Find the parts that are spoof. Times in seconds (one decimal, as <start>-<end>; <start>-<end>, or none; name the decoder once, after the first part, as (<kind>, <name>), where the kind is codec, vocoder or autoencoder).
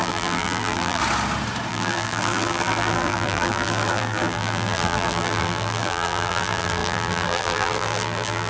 0.0-1.0 (vocoder, BigVGAN v2); 1.7-8.5